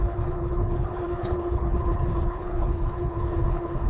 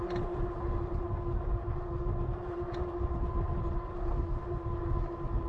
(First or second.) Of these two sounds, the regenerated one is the first